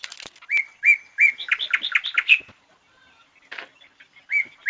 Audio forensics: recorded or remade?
recorded